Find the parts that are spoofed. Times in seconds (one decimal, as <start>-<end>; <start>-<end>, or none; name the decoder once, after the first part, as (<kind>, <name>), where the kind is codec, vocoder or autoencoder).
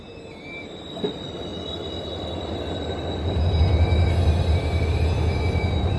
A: none